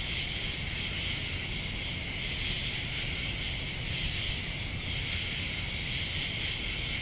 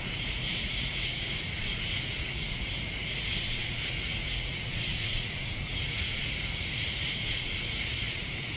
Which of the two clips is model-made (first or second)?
second